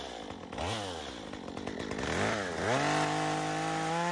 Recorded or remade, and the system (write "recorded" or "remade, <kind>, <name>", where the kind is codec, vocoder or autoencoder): recorded